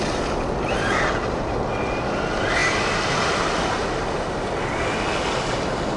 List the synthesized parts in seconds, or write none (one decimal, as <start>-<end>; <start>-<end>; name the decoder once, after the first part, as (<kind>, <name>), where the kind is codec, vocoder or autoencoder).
none